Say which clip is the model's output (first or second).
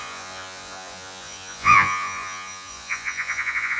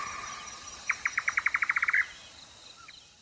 first